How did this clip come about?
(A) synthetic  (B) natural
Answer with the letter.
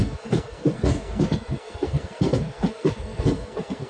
A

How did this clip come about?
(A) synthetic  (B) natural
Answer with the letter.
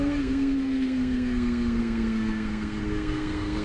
A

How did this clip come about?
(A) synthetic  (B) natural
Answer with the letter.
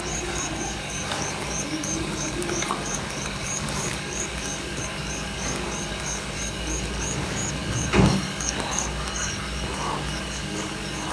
A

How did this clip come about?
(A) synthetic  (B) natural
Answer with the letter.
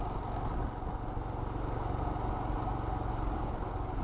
B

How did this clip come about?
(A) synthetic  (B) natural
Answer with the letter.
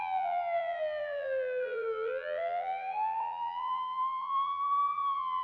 A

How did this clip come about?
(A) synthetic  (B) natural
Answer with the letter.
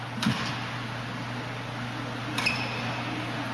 B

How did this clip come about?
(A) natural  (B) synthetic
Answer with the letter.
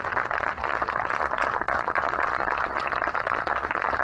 B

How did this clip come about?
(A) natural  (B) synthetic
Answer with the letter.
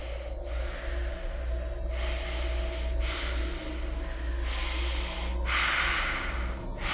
A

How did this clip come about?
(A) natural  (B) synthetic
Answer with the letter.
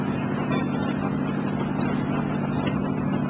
A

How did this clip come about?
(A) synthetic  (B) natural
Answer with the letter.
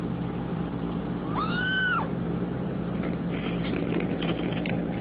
A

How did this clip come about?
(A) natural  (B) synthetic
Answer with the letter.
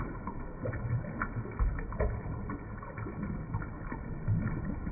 A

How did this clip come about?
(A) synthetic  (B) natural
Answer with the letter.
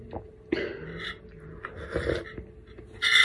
B